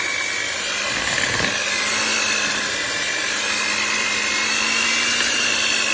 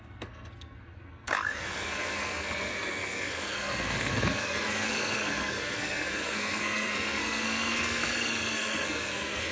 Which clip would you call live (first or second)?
first